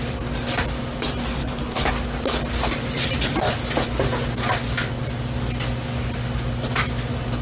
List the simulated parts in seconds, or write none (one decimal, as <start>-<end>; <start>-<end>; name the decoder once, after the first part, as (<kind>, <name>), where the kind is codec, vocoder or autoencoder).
1.4-1.9 (codec, HILCodec)